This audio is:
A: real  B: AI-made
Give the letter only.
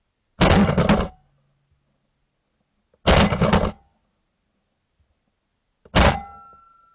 A